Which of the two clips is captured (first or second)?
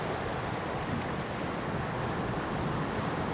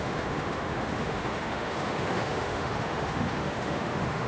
first